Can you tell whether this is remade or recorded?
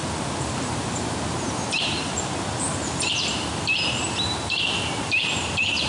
remade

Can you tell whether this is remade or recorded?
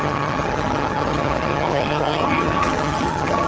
remade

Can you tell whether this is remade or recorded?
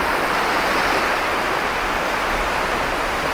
recorded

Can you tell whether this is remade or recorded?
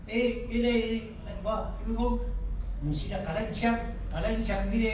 remade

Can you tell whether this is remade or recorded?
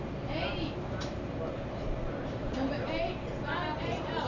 recorded